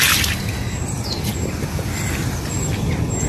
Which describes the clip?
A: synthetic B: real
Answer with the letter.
B